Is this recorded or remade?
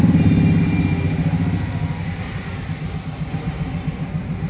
recorded